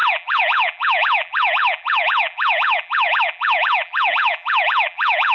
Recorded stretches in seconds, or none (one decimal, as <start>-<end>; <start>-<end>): none